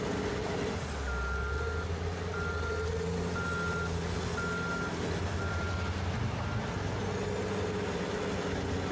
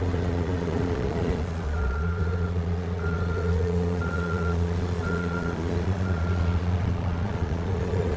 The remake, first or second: second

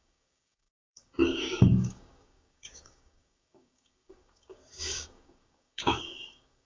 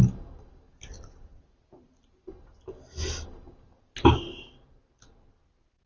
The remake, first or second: first